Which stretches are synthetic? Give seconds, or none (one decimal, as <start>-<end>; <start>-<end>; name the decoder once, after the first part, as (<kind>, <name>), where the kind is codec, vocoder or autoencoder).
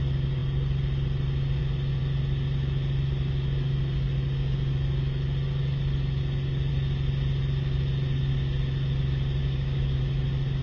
9.4-10.0 (codec, DAC)